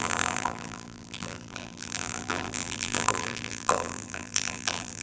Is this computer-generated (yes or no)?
yes